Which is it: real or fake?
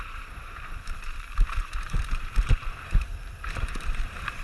fake